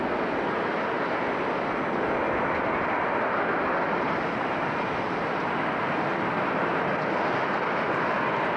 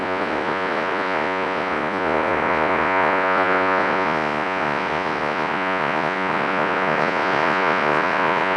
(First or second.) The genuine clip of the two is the first